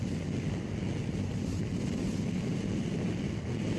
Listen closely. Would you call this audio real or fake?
real